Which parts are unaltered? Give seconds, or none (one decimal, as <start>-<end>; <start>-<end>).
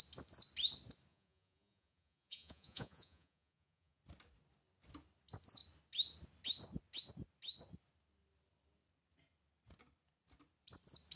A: 0.0-1.1; 4.0-11.2